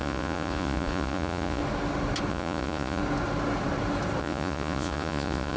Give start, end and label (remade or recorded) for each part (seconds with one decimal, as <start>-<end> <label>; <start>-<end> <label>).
0.0-1.6 remade; 1.6-2.3 recorded; 2.3-3.0 remade; 3.0-4.2 recorded; 4.2-5.6 remade